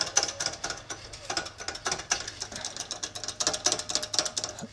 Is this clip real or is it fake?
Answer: real